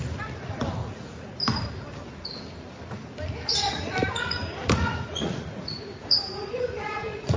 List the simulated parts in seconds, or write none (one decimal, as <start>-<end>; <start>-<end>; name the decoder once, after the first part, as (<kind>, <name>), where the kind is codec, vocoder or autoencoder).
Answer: 0.8-1.4 (vocoder, Vocos); 4.4-7.4